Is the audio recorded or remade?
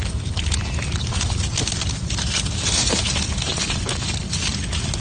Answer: recorded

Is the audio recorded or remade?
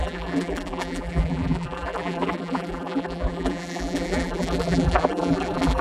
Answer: remade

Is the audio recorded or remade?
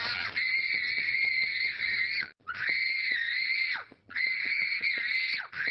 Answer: remade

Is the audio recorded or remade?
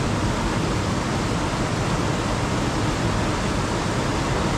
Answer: recorded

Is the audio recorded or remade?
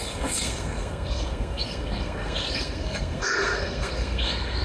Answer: remade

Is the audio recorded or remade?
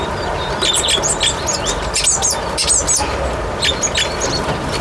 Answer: recorded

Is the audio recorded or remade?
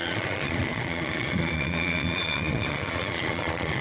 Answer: remade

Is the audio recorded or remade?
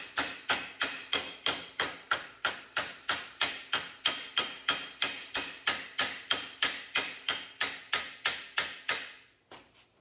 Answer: recorded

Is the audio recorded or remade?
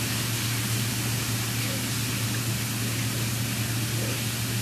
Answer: recorded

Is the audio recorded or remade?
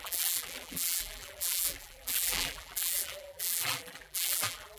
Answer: remade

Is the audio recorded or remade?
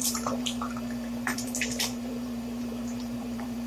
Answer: remade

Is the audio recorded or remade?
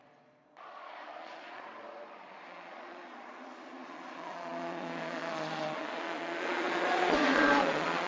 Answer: remade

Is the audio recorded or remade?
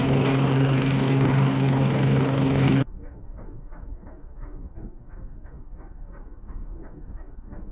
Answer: remade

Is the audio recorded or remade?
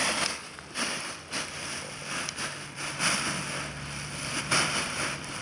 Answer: recorded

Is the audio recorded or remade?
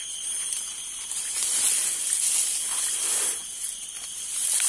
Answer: recorded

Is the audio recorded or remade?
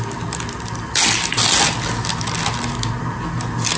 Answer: recorded